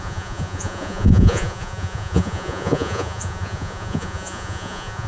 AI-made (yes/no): yes